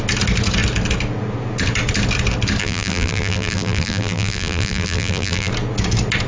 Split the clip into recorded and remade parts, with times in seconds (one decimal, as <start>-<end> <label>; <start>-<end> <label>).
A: 0.0-2.6 recorded; 2.6-5.5 remade; 5.5-6.3 recorded